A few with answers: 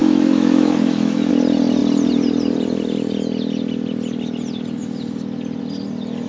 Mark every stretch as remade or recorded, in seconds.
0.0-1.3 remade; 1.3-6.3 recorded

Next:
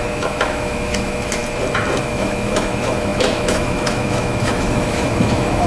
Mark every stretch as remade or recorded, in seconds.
0.0-1.4 remade; 1.4-2.0 recorded; 2.0-5.7 remade